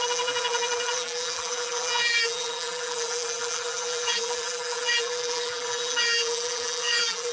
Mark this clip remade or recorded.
remade